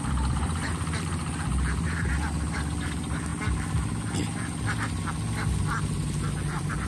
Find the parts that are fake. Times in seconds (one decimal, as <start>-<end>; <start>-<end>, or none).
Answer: 0.0-1.2; 2.5-3.3; 5.8-6.9